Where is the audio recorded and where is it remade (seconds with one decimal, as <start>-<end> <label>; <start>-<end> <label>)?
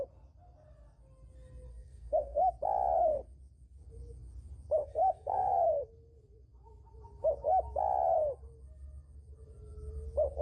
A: 0.0-1.7 recorded; 1.7-2.5 remade; 2.5-4.8 recorded; 4.8-5.9 remade; 5.9-10.4 recorded